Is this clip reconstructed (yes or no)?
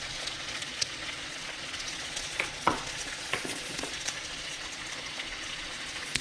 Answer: yes